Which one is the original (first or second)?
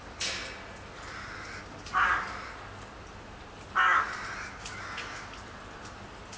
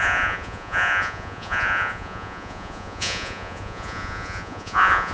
first